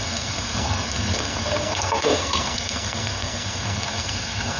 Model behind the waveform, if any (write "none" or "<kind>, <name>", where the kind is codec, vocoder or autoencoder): codec, SNAC